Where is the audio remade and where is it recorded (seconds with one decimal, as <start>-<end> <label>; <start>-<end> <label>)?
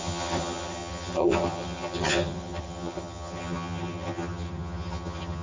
0.0-5.4 remade